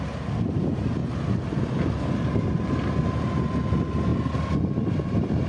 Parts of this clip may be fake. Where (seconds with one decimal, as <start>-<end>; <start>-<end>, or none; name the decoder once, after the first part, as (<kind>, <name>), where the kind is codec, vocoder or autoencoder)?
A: none